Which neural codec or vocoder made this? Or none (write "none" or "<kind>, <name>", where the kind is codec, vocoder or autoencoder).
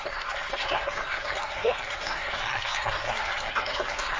codec, SNAC